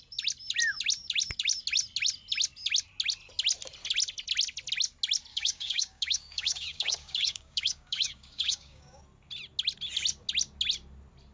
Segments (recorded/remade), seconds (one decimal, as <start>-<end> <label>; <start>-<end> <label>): 0.0-5.3 recorded; 5.3-9.0 remade; 9.0-11.3 recorded